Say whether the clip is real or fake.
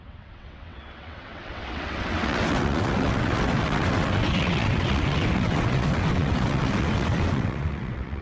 fake